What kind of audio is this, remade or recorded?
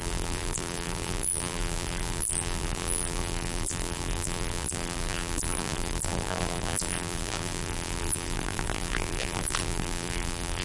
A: remade